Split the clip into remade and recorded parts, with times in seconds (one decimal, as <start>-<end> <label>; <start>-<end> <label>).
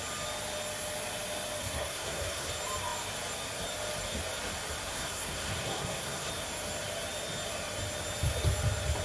0.0-1.6 recorded; 1.6-2.5 remade; 2.5-4.9 recorded; 4.9-6.3 remade; 6.3-9.0 recorded